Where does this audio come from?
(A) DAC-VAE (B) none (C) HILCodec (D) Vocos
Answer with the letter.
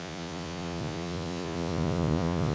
D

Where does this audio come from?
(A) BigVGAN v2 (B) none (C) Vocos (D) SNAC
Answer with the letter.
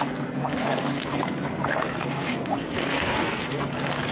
D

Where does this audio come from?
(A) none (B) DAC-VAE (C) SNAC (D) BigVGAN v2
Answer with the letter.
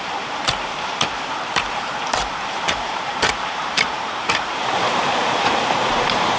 D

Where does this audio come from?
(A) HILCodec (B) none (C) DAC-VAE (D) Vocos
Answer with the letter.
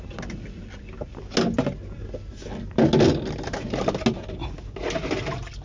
B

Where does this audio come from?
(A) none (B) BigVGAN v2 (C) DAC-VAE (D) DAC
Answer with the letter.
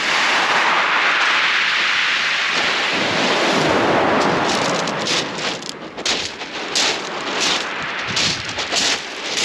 A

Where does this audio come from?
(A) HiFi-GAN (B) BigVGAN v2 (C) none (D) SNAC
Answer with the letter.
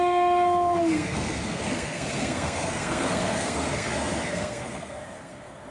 D